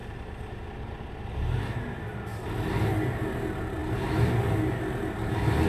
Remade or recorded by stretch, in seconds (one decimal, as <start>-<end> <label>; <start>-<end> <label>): 0.0-5.7 recorded